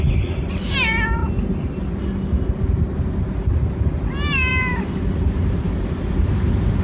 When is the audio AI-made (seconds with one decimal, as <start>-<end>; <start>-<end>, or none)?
none